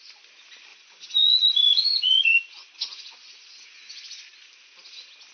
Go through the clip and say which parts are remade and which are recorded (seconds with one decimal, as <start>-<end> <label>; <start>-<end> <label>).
0.0-0.7 recorded; 0.7-3.9 remade; 3.9-5.3 recorded

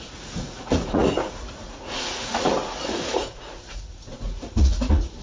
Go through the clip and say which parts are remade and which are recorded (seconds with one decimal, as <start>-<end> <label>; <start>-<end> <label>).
0.0-5.2 remade

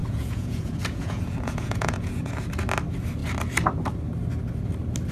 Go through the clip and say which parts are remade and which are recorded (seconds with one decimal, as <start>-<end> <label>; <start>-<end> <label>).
0.0-2.3 remade; 2.3-5.1 recorded

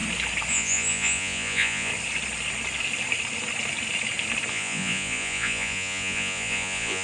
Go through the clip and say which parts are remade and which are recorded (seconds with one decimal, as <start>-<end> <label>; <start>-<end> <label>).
0.0-0.5 recorded; 0.5-1.9 remade; 1.9-4.5 recorded; 4.5-7.0 remade

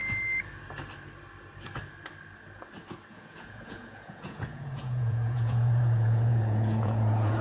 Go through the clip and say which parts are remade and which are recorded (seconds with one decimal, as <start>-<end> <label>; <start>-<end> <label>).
0.0-3.1 recorded; 3.1-7.4 remade

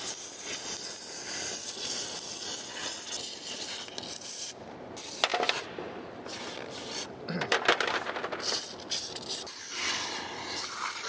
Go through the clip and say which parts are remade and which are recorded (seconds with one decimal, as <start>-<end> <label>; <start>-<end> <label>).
0.0-11.1 recorded